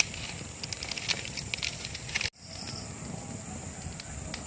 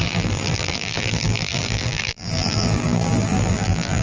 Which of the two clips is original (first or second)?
first